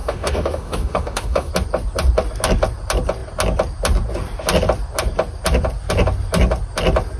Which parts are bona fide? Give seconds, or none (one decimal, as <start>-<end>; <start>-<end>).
1.5-7.2